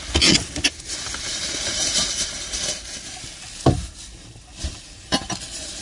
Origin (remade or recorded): recorded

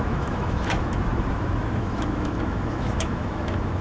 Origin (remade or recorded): remade